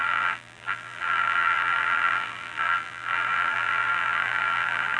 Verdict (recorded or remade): remade